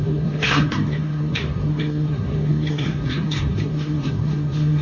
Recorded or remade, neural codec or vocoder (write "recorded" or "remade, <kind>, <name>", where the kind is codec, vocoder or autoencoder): remade, codec, SNAC